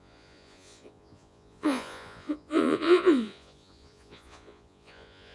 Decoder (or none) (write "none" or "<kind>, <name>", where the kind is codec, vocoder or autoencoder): vocoder, Vocos